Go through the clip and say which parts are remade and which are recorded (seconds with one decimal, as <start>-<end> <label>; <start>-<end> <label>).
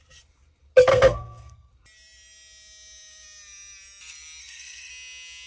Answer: 0.0-0.9 recorded; 0.9-1.7 remade; 1.7-4.4 recorded; 4.4-4.9 remade; 4.9-5.5 recorded